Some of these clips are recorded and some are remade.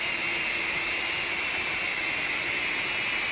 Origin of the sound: recorded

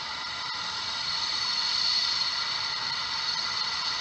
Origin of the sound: remade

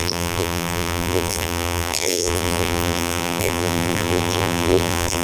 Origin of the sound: remade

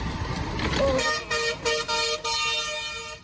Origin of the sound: recorded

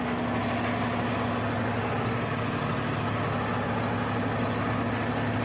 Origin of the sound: recorded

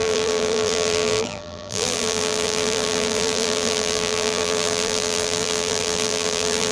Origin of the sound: remade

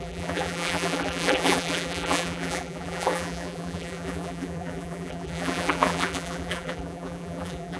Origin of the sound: remade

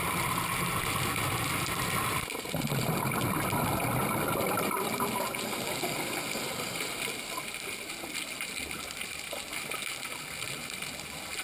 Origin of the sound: recorded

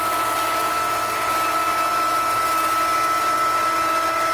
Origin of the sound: recorded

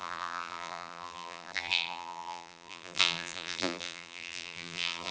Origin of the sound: remade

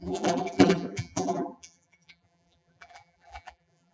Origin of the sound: remade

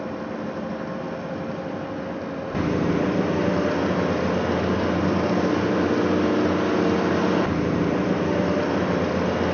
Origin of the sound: recorded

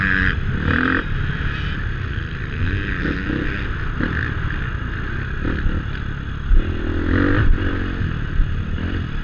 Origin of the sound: recorded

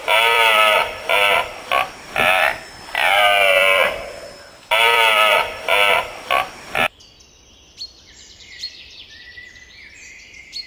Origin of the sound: remade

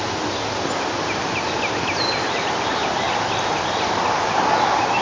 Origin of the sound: recorded